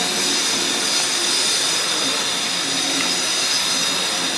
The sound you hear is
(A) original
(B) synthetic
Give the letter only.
A